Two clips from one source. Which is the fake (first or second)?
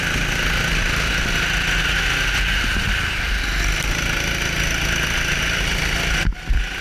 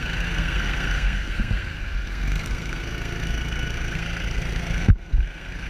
second